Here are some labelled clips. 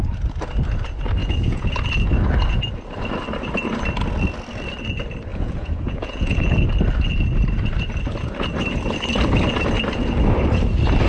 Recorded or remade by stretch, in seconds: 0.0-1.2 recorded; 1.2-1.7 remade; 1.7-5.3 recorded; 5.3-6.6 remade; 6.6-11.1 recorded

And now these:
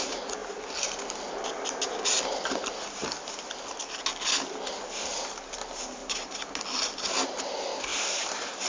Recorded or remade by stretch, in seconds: 0.0-6.0 recorded; 6.0-6.6 remade; 6.6-7.9 recorded; 7.9-8.7 remade

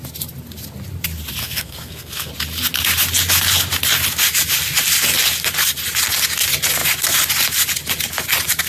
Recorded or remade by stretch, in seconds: 0.0-1.4 recorded; 1.4-2.3 remade; 2.3-8.7 recorded

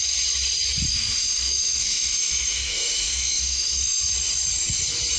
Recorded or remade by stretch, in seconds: 0.0-0.9 recorded; 0.9-4.0 remade; 4.0-5.2 recorded

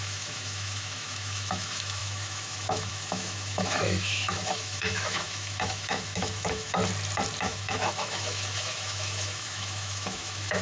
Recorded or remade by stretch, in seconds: 0.0-6.8 remade; 6.8-7.4 recorded; 7.4-10.6 remade